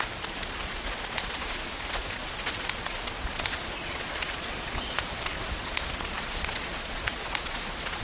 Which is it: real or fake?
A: fake